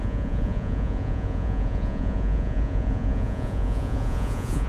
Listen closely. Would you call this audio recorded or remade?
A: remade